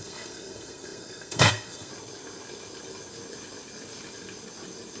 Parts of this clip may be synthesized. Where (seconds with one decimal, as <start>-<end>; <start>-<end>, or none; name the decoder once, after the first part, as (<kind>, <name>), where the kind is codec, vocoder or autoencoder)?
0.0-1.9 (codec, SNAC)